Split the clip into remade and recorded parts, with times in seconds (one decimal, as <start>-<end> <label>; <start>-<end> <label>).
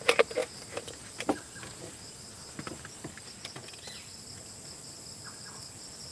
0.0-6.1 recorded